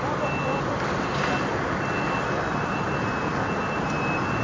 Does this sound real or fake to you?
real